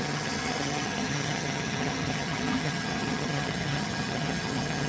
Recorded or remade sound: remade